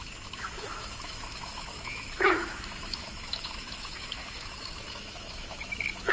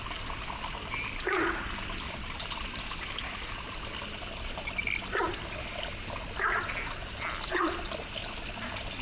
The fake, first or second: first